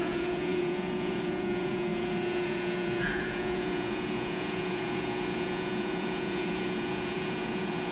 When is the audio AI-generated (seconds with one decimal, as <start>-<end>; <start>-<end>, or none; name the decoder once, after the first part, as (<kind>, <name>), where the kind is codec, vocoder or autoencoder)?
0.0-7.9 (vocoder, Vocos)